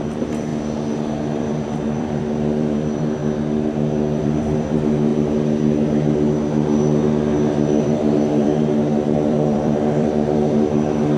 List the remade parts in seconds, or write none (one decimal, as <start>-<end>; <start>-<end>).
0.0-0.5; 1.4-3.2; 4.2-5.1; 7.8-11.2